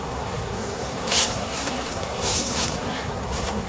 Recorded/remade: remade